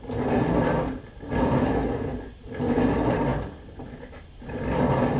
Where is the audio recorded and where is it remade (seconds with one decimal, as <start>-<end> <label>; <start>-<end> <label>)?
0.0-5.2 recorded